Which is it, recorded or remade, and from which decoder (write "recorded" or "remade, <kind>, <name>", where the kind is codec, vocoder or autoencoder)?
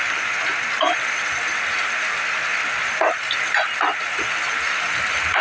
recorded